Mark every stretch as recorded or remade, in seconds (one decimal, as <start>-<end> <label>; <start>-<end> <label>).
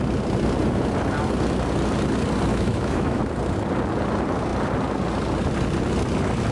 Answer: 0.0-2.5 recorded; 2.5-3.2 remade; 3.2-6.5 recorded